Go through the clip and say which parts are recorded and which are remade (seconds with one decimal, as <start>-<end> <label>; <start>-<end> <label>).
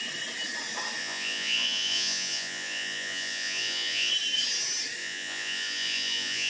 0.0-1.0 recorded; 1.0-4.1 remade; 4.1-5.0 recorded; 5.0-6.5 remade